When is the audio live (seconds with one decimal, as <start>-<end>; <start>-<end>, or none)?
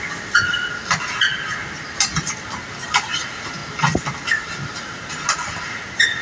0.0-6.2